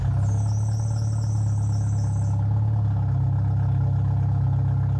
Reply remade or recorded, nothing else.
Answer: recorded